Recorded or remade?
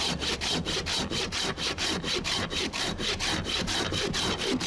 remade